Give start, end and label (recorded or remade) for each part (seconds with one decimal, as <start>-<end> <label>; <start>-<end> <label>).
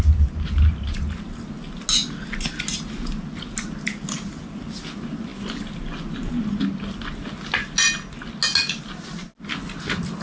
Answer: 0.0-10.2 recorded